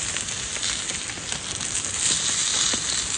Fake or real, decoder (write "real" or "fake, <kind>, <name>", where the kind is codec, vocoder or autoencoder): real